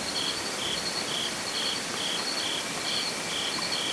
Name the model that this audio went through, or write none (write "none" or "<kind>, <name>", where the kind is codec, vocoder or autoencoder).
vocoder, BigVGAN v2